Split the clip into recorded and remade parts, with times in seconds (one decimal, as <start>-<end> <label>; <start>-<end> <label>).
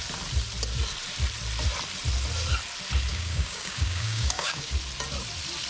0.0-3.1 recorded; 3.1-4.7 remade; 4.7-5.7 recorded